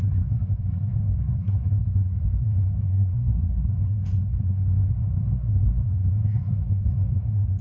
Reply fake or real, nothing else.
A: fake